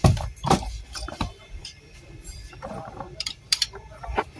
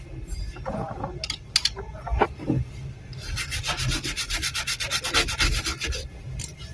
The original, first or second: second